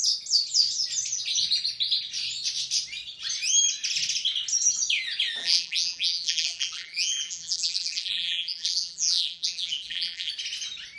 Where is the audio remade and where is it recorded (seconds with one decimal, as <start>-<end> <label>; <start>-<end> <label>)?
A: 0.0-5.4 recorded; 5.4-10.3 remade; 10.3-11.0 recorded